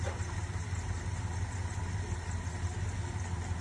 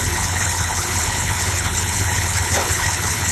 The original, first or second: first